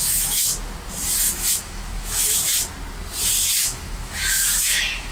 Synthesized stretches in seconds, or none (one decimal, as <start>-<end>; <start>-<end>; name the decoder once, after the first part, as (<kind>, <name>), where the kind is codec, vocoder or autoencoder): 0.0-0.5 (autoencoder, DAC-VAE); 1.2-2.5; 3.6-5.1